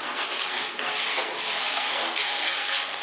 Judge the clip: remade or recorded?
remade